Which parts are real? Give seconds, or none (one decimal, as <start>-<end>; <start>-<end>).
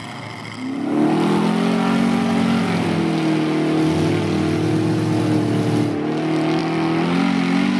0.0-7.8